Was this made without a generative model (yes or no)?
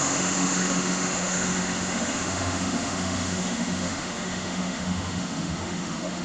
no